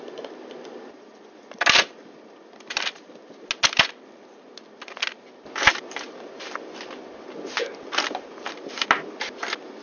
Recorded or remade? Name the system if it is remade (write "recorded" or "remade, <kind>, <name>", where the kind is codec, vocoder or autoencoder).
recorded